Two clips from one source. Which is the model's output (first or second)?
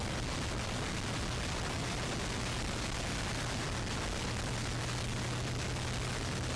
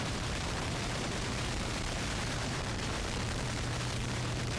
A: second